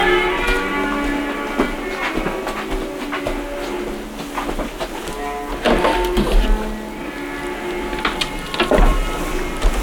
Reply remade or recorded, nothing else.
recorded